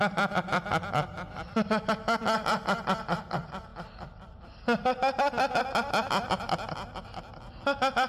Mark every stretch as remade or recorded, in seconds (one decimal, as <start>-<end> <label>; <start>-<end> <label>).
0.0-8.1 recorded